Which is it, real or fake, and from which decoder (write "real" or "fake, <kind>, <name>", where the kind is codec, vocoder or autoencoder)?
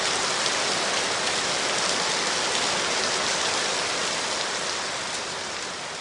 real